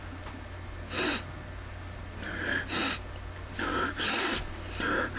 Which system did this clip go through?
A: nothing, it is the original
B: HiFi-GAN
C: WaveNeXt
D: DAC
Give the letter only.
A